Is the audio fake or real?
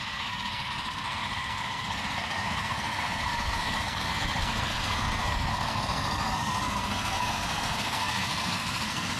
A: fake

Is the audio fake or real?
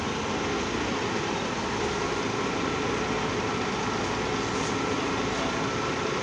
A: real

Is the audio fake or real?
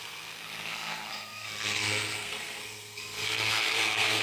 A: fake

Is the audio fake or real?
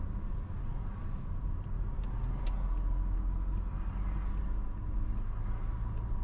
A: real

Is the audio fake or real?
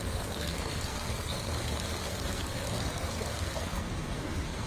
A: fake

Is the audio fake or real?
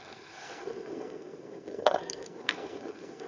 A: fake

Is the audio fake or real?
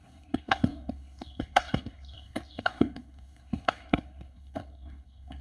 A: fake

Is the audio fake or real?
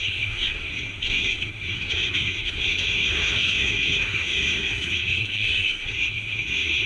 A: fake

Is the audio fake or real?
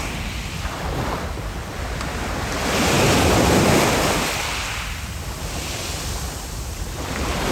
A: real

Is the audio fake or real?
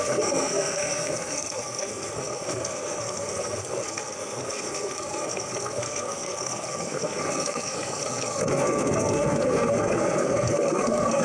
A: fake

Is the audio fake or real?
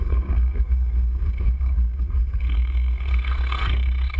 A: fake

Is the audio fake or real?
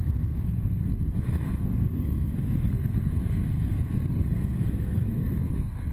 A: fake